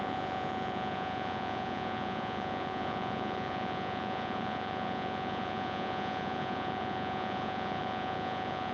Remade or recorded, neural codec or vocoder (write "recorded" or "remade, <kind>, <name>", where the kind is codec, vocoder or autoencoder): remade, vocoder, Vocos